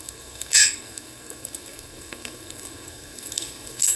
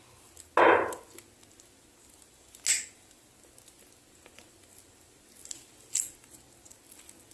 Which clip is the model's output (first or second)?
first